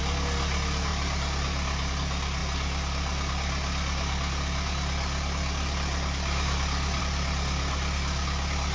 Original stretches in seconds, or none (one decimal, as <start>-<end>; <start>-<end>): 0.0-8.7

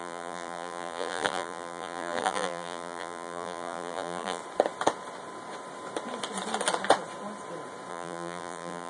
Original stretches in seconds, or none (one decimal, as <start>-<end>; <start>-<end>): 4.4-7.9

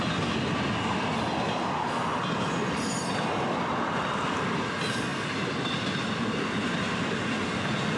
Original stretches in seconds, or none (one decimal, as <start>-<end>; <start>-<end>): 0.0-8.0

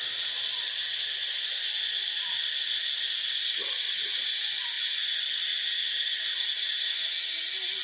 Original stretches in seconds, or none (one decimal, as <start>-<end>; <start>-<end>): 0.0-7.8

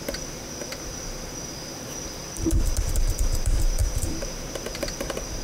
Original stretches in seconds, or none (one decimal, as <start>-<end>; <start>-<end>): none